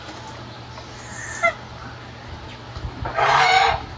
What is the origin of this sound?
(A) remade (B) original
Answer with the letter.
B